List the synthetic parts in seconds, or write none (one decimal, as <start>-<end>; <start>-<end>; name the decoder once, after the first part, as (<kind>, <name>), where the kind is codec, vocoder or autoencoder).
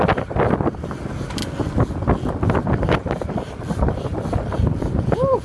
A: 0.0-1.4 (vocoder, BigVGAN v2); 3.3-4.1; 4.6-5.4